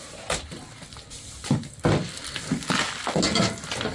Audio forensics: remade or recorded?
recorded